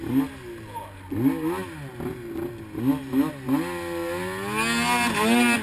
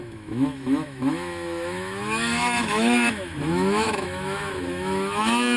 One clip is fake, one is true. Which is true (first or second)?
first